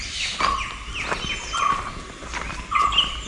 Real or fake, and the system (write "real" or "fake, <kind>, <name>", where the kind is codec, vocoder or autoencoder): real